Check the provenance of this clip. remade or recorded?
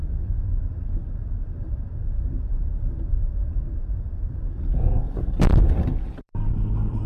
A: remade